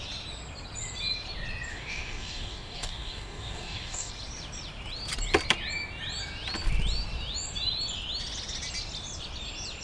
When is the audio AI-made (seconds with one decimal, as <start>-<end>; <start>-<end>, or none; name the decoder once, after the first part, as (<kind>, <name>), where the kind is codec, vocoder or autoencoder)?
1.7-4.1 (codec, DAC)